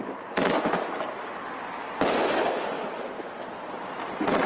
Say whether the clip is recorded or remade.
recorded